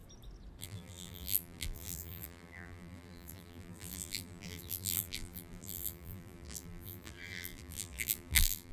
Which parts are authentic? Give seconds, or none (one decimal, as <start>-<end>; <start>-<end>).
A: 0.0-0.6